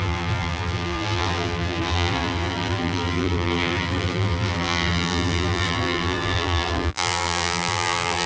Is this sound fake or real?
fake